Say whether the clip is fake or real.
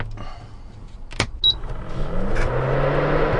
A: real